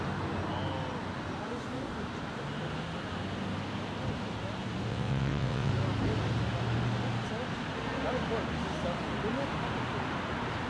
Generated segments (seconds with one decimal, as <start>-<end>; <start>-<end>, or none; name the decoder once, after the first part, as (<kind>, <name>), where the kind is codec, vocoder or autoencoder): 4.9-5.7 (vocoder, WaveNeXt)